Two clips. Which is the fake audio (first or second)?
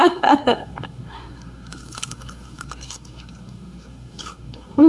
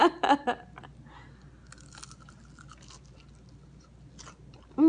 first